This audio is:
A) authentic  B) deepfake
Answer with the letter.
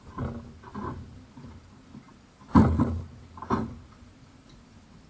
A